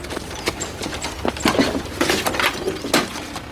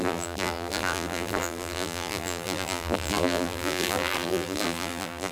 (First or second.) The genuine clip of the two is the first